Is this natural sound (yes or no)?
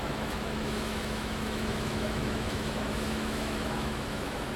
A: no